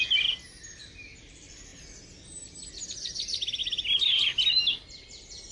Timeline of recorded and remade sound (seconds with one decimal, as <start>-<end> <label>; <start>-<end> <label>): 0.0-5.5 recorded